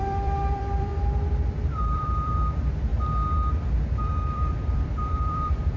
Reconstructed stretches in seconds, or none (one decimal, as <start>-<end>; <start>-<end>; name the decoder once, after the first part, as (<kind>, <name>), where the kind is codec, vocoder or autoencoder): 0.0-0.9 (vocoder, BigVGAN v2); 1.8-2.9; 3.9-5.8